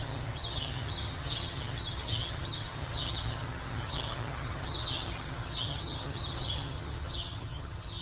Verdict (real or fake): fake